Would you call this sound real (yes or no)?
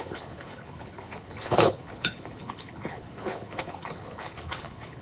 no